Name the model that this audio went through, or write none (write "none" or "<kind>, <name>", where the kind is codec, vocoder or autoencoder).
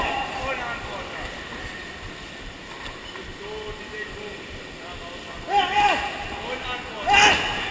none